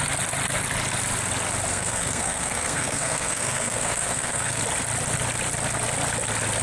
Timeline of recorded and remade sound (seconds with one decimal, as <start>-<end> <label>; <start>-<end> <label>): 0.0-1.7 recorded; 1.7-4.6 remade; 4.6-6.6 recorded